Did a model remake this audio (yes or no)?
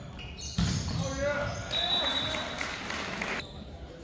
no